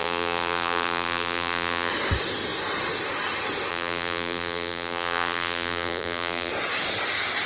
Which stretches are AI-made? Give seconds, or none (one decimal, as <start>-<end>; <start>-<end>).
0.0-1.9; 3.7-6.5